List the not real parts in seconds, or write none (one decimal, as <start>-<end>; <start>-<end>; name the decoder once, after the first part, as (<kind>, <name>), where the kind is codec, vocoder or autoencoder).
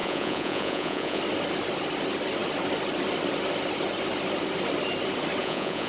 0.0-1.2 (vocoder, Vocos); 5.4-5.9